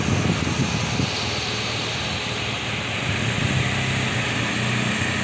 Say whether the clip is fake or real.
real